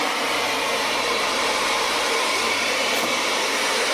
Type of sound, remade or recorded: remade